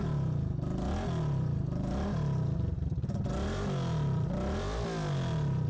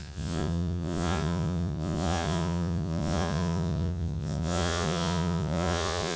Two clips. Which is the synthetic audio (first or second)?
second